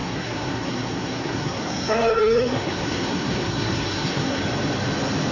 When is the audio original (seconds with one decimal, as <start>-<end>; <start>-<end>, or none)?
4.4-5.3